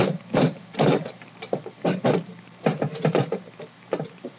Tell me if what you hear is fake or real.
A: fake